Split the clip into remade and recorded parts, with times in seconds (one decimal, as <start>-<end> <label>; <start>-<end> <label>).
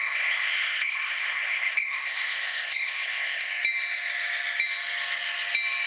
0.0-3.5 remade; 3.5-5.9 recorded